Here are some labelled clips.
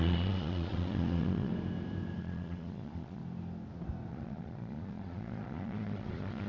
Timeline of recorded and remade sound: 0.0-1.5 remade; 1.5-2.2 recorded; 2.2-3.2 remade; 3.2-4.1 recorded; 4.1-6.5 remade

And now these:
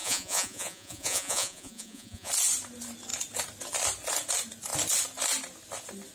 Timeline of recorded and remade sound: 0.0-2.3 remade; 2.3-6.1 recorded

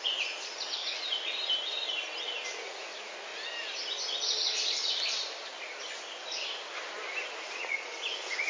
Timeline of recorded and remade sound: 0.0-0.8 remade; 0.8-2.6 recorded; 2.6-3.3 remade; 3.3-7.3 recorded; 7.3-8.5 remade

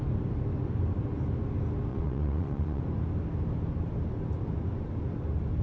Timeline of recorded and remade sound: 0.0-1.9 recorded; 1.9-2.8 remade; 2.8-5.6 recorded